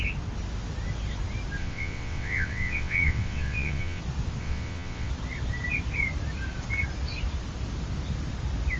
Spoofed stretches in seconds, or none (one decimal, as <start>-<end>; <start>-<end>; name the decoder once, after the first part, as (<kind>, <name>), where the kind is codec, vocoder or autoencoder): 1.6-4.0 (vocoder, WaveNeXt); 4.4-5.1